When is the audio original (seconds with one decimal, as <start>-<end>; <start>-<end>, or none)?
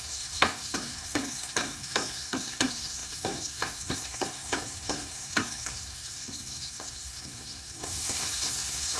none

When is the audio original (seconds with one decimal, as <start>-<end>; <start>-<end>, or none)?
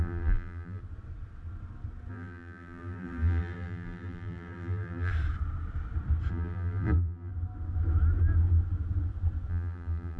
0.8-2.1; 5.1-6.3; 7.3-9.5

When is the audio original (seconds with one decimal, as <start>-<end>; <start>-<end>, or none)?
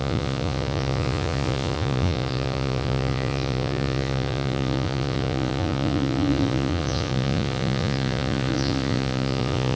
none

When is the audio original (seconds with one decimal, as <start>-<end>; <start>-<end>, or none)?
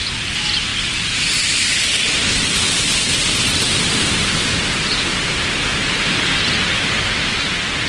0.0-7.9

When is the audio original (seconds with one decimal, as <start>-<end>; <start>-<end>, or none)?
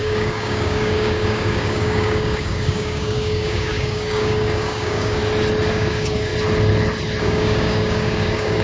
5.2-5.7; 6.3-7.2